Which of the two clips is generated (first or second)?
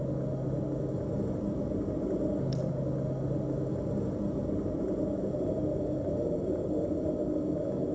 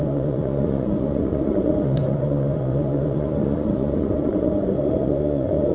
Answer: second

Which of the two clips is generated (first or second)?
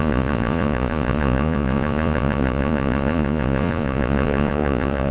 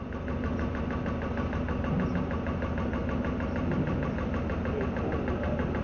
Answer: first